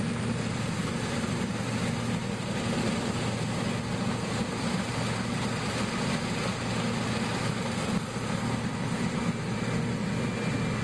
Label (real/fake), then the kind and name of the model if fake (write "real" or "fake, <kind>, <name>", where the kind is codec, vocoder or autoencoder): real